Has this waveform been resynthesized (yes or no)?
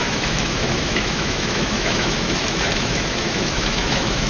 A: yes